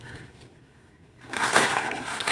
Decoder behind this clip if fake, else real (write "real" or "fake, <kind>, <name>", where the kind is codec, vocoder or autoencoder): fake, codec, SNAC